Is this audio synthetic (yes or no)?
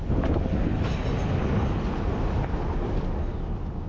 no